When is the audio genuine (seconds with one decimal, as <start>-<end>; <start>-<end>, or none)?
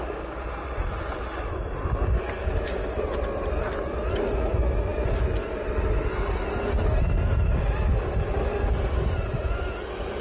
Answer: 0.0-10.2